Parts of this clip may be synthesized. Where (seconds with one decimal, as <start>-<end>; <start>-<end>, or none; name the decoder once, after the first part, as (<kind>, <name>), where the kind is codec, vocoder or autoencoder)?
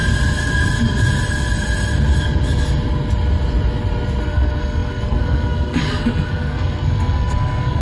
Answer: 4.2-7.8 (codec, SNAC)